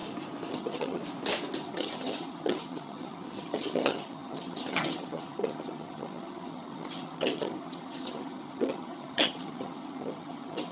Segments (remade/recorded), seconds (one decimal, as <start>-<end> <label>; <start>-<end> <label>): 0.0-0.5 recorded; 0.5-1.0 remade; 1.0-1.6 recorded; 1.6-10.7 remade